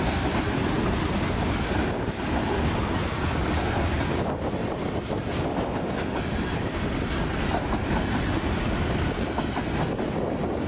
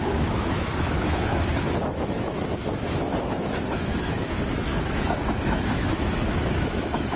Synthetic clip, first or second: second